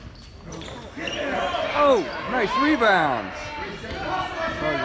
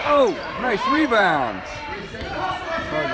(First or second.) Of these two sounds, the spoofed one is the second